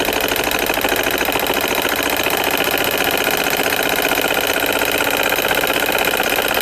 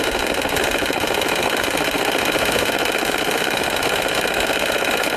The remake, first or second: second